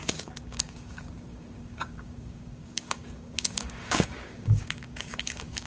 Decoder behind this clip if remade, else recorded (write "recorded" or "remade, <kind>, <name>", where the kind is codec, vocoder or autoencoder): remade, codec, DAC